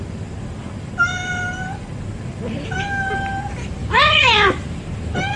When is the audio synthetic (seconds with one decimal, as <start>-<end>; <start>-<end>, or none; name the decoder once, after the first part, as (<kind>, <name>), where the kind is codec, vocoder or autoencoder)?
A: 3.8-5.4 (vocoder, BigVGAN v2)